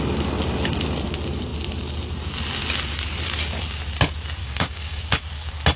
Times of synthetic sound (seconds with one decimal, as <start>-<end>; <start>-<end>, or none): 4.4-5.0